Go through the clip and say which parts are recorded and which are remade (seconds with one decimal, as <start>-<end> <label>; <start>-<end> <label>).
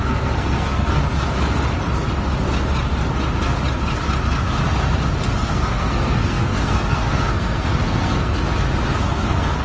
0.0-1.0 remade; 1.0-5.5 recorded; 5.5-8.3 remade; 8.3-9.0 recorded; 9.0-9.6 remade